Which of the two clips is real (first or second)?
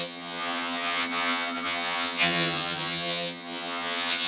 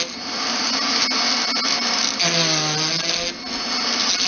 second